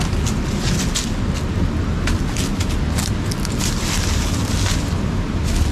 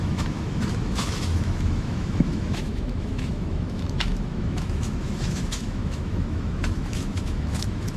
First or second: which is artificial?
second